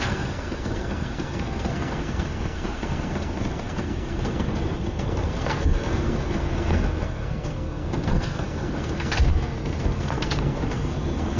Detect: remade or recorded remade